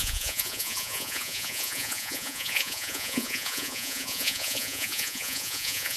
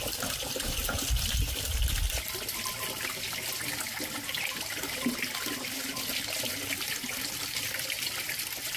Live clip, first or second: second